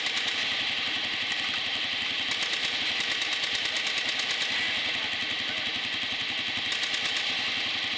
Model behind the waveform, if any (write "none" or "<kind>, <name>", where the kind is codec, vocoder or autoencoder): none